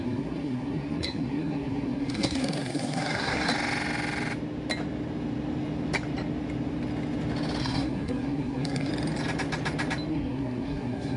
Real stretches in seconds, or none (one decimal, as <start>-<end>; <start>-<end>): 3.5-7.6; 8.9-10.1